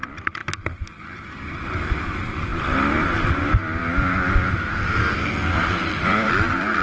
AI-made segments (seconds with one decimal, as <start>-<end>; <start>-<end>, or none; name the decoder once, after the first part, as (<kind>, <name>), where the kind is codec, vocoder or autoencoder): 0.0-0.4 (vocoder, BigVGAN v2); 1.0-6.8